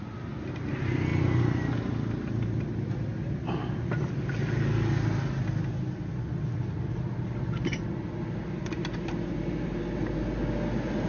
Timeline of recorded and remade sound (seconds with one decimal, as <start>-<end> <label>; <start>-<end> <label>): 0.0-11.1 recorded